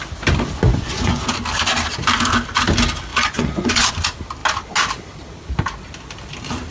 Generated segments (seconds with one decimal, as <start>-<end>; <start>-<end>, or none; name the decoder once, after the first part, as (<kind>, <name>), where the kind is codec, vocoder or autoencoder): 0.7-1.2 (vocoder, Vocos); 3.1-3.9